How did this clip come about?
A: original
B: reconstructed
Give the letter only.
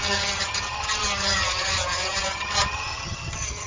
B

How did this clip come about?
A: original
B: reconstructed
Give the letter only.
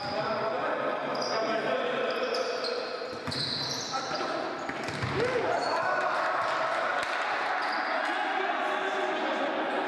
A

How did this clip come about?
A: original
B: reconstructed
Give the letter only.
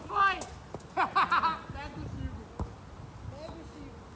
A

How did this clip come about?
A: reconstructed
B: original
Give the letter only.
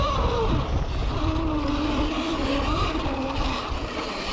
B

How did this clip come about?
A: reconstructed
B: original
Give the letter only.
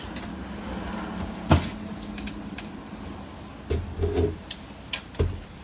B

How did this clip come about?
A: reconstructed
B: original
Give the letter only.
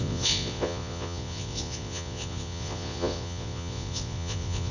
A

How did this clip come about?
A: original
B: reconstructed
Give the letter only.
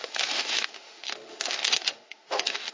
B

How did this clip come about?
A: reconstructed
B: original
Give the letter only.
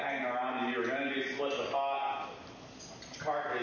B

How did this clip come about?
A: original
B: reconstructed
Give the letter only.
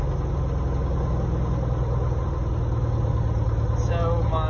A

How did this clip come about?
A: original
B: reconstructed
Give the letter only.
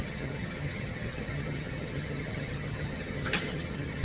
B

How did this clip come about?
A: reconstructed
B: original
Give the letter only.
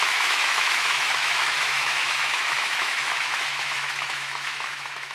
A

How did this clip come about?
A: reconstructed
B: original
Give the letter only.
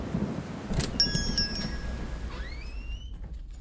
B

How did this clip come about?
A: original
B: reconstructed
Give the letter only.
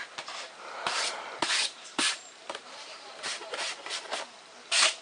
B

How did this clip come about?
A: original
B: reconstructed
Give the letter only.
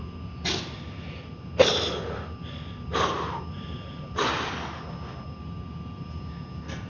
A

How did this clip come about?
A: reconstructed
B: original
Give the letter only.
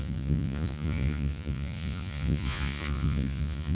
A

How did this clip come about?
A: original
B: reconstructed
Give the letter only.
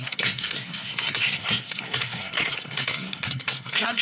B